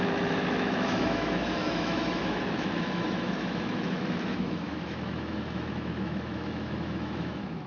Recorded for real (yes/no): no